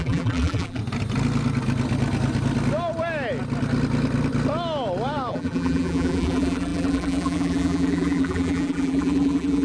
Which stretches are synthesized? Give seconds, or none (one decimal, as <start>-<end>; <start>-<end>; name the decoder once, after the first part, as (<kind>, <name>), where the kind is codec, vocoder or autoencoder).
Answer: 0.0-0.8 (vocoder, BigVGAN v2); 5.3-9.6